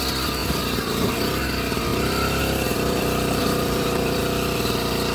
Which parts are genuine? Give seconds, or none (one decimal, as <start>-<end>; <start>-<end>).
0.0-0.4; 1.1-1.9; 4.2-5.1